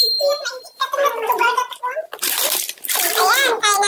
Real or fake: fake